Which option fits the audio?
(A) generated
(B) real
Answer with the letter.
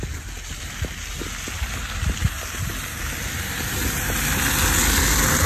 B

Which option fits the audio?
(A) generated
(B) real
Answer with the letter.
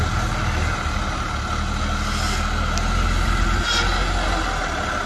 B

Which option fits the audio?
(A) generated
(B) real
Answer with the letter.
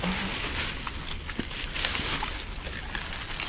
B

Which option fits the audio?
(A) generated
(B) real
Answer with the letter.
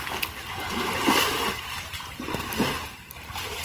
B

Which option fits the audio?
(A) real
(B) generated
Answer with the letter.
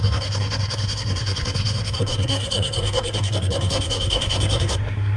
B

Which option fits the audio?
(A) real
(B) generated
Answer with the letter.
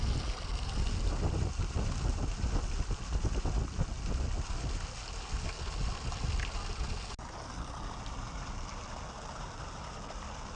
A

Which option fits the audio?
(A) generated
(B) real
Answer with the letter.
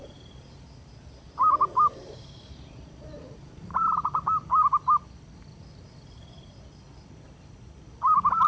B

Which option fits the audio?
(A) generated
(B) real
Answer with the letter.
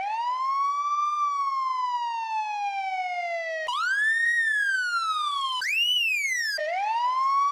B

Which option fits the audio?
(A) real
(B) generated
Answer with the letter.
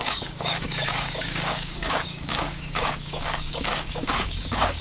B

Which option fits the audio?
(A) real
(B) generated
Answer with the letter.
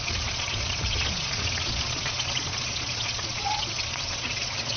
B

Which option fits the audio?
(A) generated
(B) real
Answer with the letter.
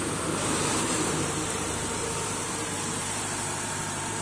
A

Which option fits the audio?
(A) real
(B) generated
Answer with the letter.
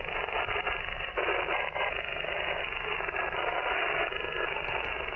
A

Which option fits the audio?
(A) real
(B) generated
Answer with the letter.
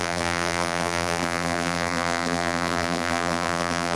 B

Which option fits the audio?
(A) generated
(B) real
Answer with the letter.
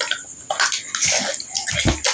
B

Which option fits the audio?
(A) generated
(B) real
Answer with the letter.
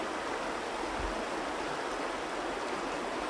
B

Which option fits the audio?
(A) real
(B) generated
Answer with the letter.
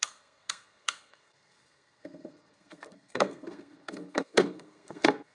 B